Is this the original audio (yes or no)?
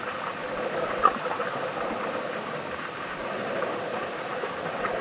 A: yes